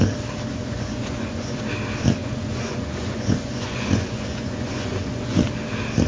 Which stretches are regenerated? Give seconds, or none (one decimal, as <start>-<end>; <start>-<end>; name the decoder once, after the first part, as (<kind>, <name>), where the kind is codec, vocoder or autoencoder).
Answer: 0.5-1.6 (vocoder, Vocos); 2.2-5.4